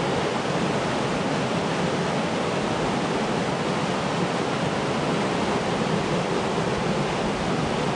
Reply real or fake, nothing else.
real